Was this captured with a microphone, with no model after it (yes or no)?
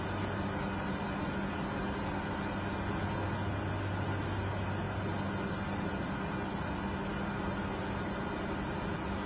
yes